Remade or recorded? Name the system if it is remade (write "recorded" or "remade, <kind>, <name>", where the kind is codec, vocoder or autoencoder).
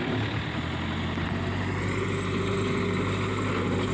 recorded